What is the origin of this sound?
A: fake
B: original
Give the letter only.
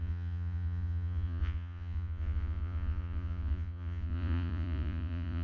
A